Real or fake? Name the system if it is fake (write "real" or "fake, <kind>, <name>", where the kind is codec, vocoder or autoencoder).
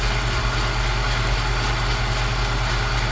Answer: real